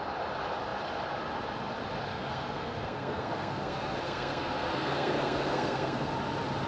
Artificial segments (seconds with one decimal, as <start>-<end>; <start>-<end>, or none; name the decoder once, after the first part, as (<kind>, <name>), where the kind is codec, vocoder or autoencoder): 2.1-6.1 (codec, SNAC)